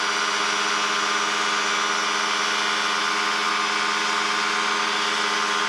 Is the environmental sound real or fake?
real